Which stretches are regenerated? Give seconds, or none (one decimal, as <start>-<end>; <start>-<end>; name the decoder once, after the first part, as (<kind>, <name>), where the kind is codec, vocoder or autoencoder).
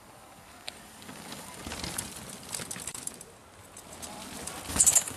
0.0-1.6 (codec, DAC); 4.7-5.2